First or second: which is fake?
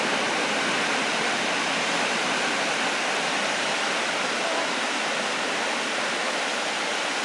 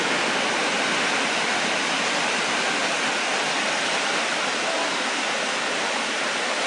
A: first